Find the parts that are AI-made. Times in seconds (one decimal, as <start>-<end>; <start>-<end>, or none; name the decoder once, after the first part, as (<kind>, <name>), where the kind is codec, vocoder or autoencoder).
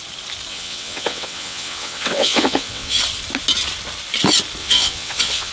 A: 0.5-3.0 (vocoder, WaveNeXt); 4.6-5.5